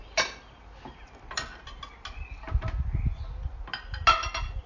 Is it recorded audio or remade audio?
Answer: recorded